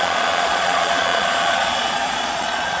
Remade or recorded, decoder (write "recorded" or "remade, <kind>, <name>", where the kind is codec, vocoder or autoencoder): remade, vocoder, Vocos